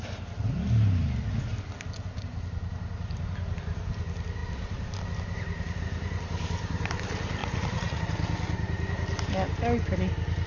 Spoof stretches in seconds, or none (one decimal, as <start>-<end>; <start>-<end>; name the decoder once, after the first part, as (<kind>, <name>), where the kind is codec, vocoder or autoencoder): 7.4-8.0 (vocoder, Vocos)